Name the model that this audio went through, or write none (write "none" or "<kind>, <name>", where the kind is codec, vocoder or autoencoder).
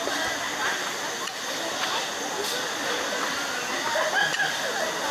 none